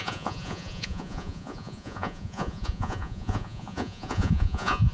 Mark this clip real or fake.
fake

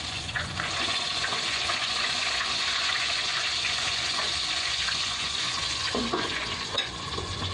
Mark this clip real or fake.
fake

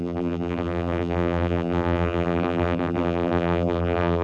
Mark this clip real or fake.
fake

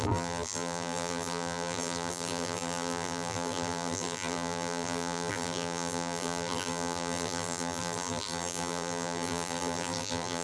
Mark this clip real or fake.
fake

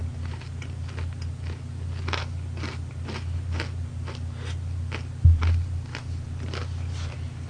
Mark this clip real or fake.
real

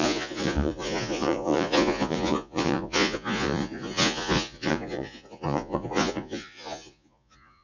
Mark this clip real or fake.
fake